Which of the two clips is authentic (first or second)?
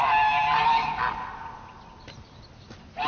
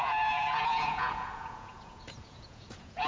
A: first